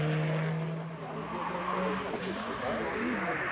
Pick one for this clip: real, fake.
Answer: real